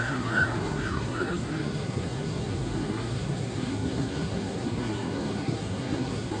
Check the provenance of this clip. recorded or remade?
remade